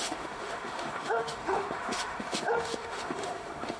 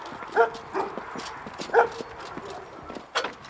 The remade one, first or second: first